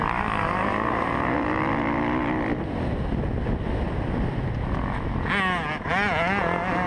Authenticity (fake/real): real